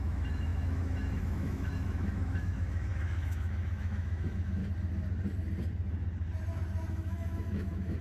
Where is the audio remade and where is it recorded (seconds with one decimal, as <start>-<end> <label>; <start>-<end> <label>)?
0.0-4.6 remade; 4.6-6.9 recorded; 6.9-8.0 remade